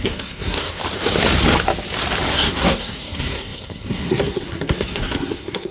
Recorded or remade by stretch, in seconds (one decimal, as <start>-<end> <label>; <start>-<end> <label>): 0.0-0.8 remade; 0.8-2.3 recorded; 2.3-5.7 remade